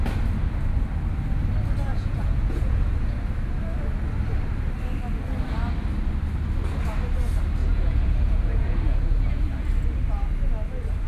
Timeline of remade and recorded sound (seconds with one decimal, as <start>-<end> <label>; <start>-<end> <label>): 0.0-1.9 recorded; 1.9-3.2 remade; 3.2-7.6 recorded; 7.6-9.5 remade; 9.5-11.1 recorded